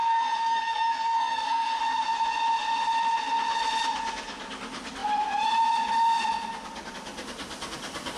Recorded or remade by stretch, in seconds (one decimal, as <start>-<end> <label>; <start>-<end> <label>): 0.0-1.8 remade; 1.8-8.2 recorded